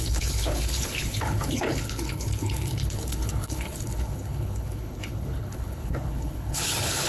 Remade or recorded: remade